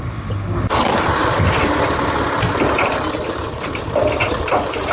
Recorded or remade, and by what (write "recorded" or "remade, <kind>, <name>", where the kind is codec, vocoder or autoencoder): recorded